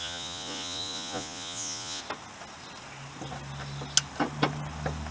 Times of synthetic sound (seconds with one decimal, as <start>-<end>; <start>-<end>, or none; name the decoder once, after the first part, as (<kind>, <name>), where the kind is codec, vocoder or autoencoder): 0.0-2.0 (vocoder, Vocos)